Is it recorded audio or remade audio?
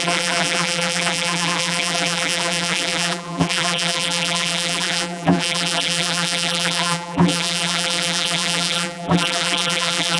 remade